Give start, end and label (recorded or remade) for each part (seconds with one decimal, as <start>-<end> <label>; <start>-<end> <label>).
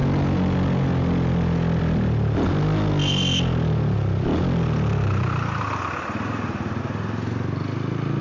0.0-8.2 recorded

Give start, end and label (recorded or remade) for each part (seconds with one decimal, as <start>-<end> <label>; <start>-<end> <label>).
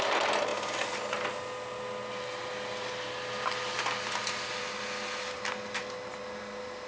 0.0-6.9 recorded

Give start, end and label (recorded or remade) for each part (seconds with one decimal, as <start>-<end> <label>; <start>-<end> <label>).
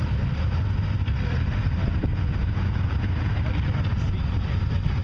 0.0-2.1 recorded; 2.1-3.3 remade; 3.3-5.0 recorded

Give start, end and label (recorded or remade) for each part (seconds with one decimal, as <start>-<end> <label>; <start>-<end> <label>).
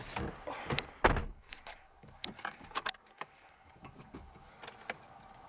0.0-1.2 recorded; 1.2-4.5 remade; 4.5-5.5 recorded